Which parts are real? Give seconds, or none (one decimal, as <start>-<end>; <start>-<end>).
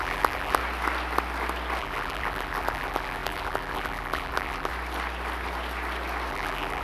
0.6-1.8; 4.7-6.3